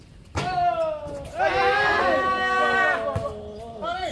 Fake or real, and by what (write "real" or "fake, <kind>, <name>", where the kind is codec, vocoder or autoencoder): real